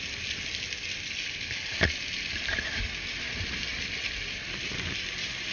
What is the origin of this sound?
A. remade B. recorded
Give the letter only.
B